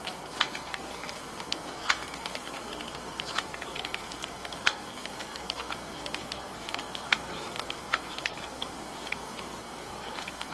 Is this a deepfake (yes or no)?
yes